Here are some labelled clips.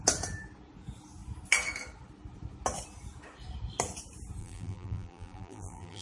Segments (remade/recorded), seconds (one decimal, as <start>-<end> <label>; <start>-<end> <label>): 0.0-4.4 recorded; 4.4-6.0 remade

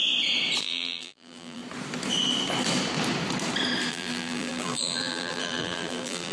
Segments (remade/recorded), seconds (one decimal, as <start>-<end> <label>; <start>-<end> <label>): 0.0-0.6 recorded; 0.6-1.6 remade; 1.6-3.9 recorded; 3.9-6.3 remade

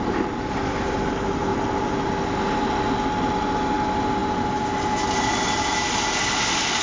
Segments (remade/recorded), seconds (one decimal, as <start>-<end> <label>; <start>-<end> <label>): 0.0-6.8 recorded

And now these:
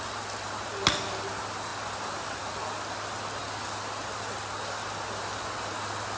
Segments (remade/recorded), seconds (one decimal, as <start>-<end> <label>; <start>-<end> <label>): 0.0-6.2 recorded

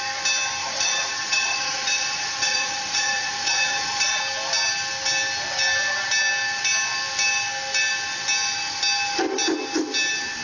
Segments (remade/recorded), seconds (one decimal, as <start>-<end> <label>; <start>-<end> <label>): 0.0-0.6 recorded; 0.6-4.2 remade; 4.2-10.4 recorded